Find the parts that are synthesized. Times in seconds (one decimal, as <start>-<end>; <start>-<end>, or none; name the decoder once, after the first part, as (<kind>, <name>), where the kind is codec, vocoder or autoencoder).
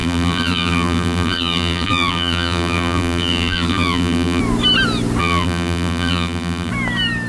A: 0.0-4.4 (vocoder, BigVGAN v2); 5.2-6.7